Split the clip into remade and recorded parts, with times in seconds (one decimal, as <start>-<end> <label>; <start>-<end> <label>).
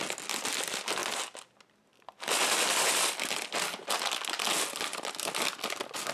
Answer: 0.0-6.1 recorded